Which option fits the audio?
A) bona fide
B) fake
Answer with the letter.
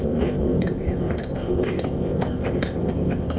B